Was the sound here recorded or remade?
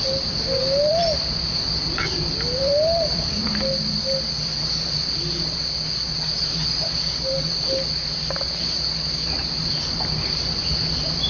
remade